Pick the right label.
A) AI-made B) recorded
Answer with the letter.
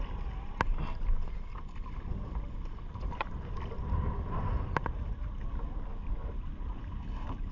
B